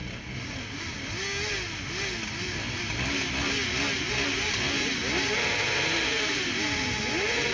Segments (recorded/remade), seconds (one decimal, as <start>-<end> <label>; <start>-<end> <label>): 0.0-7.5 recorded